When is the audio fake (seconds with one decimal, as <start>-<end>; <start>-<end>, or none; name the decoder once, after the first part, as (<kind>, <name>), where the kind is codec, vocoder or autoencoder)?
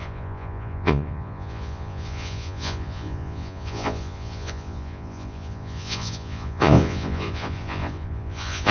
0.0-8.7 (vocoder, Vocos)